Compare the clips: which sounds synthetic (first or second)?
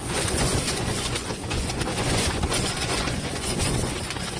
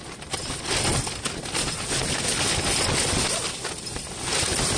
first